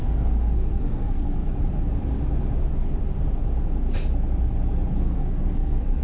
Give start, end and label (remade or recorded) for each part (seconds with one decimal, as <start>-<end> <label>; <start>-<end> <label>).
0.0-1.4 remade; 1.4-5.0 recorded; 5.0-6.0 remade